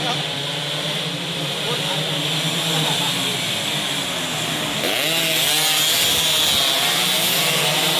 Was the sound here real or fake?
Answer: real